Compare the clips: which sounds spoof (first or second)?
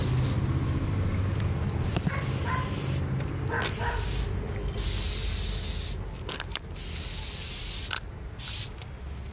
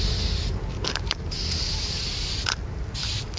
second